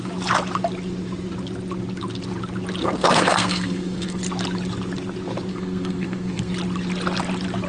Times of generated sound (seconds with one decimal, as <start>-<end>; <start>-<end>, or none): 2.8-4.2; 5.5-6.5